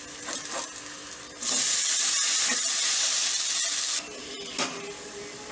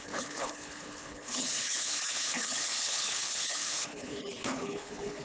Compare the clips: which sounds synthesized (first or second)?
second